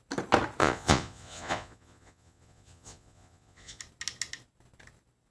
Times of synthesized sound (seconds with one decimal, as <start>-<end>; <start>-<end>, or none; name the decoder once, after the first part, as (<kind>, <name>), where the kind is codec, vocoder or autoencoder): 0.6-3.8 (vocoder, Vocos)